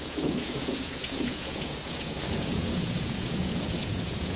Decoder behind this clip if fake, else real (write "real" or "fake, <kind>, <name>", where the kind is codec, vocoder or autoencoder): fake, vocoder, Vocos